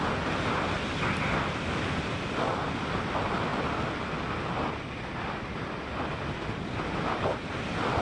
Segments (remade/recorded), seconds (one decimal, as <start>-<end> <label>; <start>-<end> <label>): 0.0-8.0 recorded